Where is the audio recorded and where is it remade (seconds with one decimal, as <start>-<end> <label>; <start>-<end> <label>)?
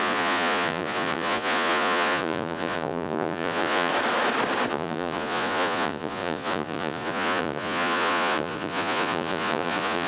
0.0-3.9 remade; 3.9-4.7 recorded; 4.7-10.1 remade